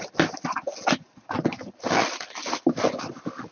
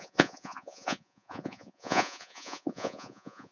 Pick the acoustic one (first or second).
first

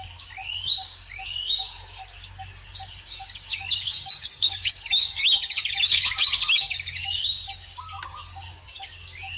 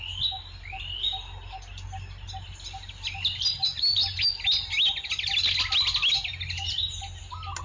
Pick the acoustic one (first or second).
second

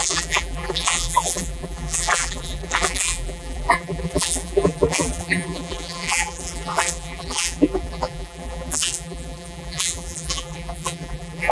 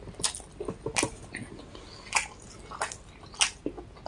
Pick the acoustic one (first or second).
second